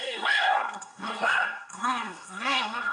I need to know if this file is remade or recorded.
remade